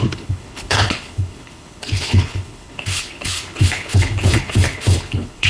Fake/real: fake